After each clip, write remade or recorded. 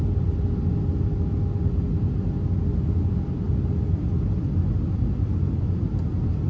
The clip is recorded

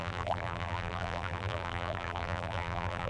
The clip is remade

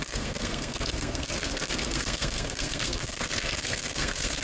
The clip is remade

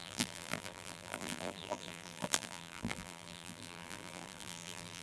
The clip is remade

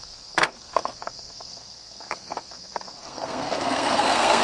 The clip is remade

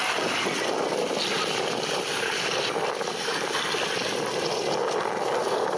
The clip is recorded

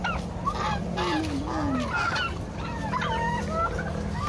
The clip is recorded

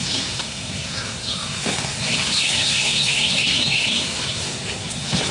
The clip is remade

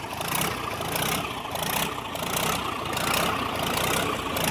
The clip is recorded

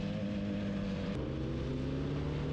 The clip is recorded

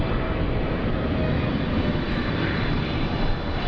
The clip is recorded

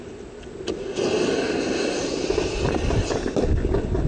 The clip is recorded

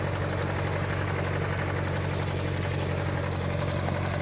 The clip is recorded